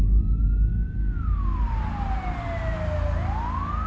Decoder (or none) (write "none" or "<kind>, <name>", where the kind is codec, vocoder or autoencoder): none